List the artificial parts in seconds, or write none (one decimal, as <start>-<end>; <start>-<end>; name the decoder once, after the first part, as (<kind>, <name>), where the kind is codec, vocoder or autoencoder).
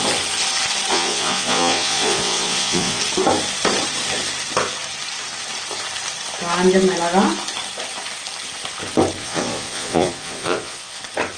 0.9-3.0 (vocoder, Vocos); 9.2-11.0